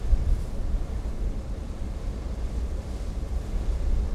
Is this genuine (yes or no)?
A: yes